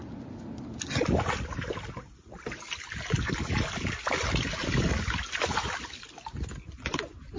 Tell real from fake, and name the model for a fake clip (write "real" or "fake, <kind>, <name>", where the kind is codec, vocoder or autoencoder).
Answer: real